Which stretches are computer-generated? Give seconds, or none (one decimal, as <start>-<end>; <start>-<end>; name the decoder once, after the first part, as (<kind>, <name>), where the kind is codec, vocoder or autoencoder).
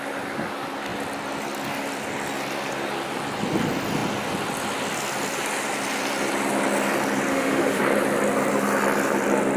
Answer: 7.3-7.8 (autoencoder, DAC-VAE)